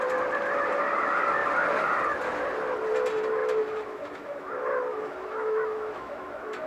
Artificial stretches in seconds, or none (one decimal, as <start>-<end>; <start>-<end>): 3.4-4.5; 4.9-6.7